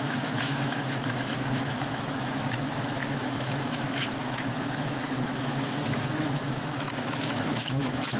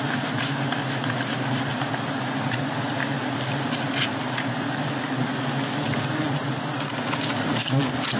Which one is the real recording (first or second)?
second